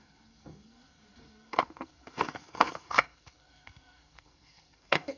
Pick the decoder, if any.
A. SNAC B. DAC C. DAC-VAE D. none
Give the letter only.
A